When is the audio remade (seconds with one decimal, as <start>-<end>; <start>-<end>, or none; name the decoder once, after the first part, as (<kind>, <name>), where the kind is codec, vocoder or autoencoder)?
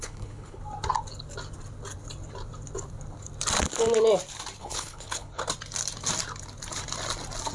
0.0-0.6 (codec, HILCodec); 4.6-5.4